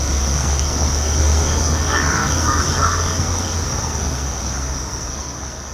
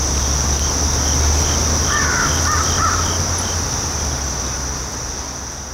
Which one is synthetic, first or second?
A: first